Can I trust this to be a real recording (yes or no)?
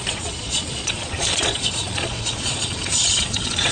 no